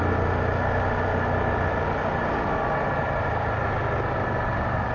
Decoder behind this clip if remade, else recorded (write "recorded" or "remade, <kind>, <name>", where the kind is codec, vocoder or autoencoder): recorded